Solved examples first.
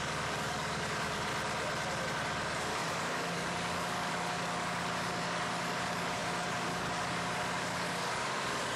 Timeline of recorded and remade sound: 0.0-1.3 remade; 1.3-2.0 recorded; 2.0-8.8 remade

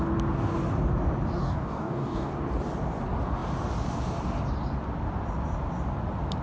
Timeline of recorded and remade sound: 0.0-1.4 recorded; 1.4-2.3 remade; 2.3-6.4 recorded

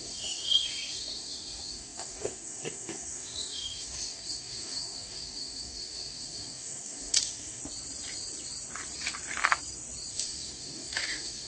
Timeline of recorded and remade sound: 0.0-7.6 remade; 7.6-10.1 recorded; 10.1-11.5 remade

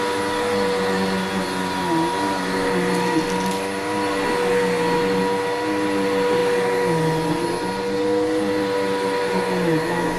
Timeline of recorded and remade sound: 0.0-10.2 recorded